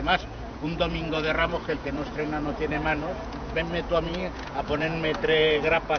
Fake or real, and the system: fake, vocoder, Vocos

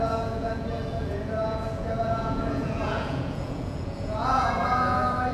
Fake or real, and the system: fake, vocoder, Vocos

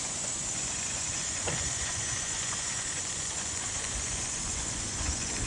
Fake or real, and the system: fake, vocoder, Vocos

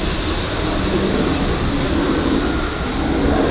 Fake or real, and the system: real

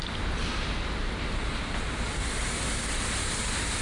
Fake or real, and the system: real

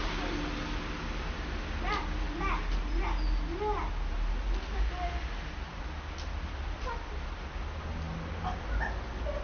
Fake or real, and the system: real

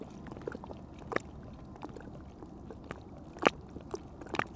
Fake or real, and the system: real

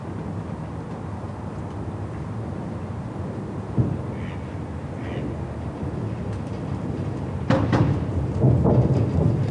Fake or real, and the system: real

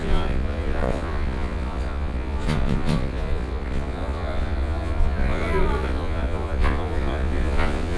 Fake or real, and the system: fake, vocoder, Vocos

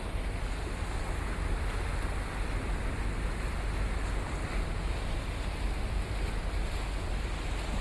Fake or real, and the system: real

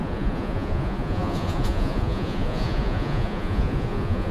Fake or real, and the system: fake, vocoder, Vocos